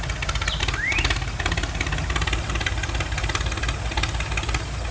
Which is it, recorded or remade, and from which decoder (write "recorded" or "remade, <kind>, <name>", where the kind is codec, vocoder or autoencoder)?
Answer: recorded